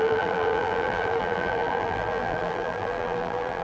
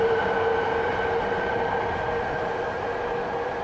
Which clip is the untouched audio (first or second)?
second